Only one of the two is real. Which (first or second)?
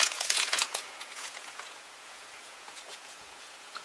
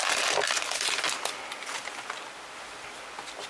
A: second